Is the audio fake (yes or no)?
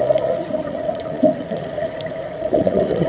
yes